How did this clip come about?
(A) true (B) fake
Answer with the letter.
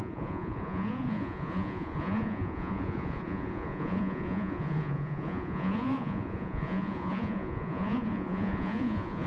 B